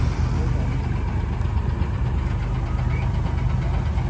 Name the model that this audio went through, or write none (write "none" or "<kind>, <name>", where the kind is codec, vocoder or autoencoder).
none